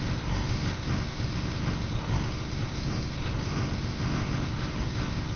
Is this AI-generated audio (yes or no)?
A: yes